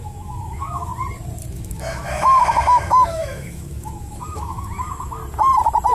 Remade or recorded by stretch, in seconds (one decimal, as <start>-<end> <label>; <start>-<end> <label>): 0.0-0.9 remade; 0.9-1.5 recorded; 1.5-5.2 remade; 5.2-5.9 recorded